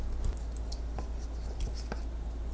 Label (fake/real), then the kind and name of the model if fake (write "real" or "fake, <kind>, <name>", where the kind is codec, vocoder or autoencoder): real